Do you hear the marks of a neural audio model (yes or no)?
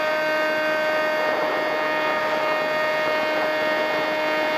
no